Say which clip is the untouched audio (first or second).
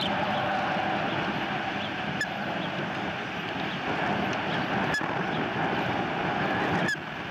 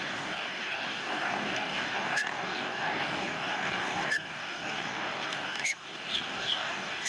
first